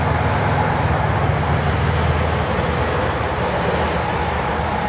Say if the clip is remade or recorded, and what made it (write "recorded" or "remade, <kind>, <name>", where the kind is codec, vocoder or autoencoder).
recorded